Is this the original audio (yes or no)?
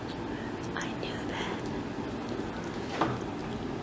yes